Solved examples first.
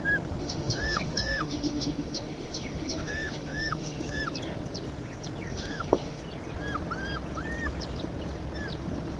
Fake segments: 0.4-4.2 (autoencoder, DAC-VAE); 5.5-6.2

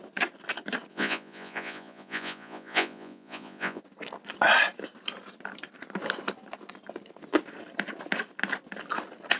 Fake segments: 0.9-3.8 (vocoder, Vocos)

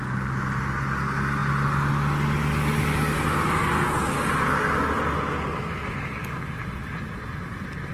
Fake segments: none